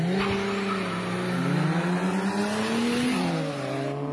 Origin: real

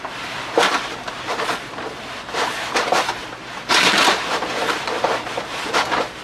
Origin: fake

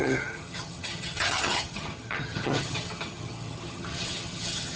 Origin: fake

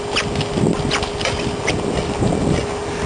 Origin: real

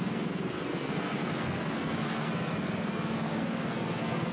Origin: fake